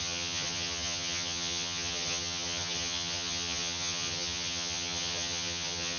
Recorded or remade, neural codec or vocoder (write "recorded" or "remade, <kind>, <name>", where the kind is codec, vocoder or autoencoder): remade, vocoder, HiFi-GAN